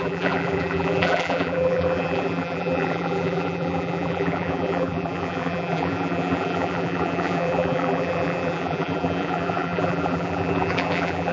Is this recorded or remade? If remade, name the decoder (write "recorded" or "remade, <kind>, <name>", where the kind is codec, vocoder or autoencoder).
remade, vocoder, BigVGAN v2